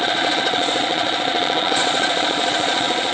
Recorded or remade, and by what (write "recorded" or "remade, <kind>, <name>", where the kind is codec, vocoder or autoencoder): remade, vocoder, Vocos